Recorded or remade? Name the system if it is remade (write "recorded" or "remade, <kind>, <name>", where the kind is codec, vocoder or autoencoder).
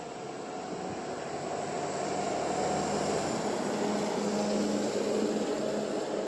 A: recorded